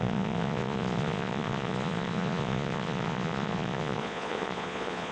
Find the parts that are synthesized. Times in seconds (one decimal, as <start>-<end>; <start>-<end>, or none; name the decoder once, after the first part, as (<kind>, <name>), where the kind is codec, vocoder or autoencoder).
0.0-5.1 (vocoder, Vocos)